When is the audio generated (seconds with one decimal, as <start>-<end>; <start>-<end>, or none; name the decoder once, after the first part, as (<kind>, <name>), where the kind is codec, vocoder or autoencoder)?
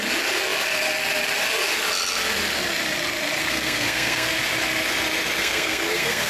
3.4-4.4 (codec, SNAC); 5.4-6.3